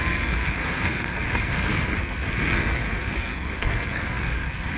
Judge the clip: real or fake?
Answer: fake